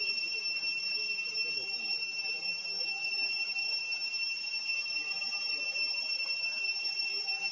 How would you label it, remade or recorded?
remade